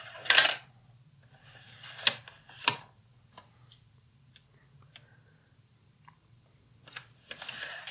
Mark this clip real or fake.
fake